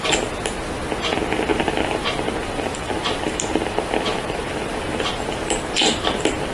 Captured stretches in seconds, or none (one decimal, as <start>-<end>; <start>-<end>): 0.0-1.5; 5.4-6.5